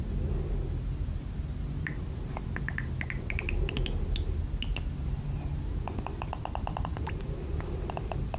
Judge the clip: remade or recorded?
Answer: recorded